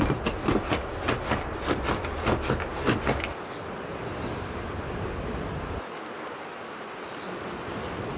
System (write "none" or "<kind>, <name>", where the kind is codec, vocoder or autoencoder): none